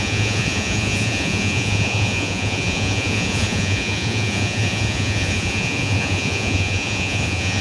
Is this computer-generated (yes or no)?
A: yes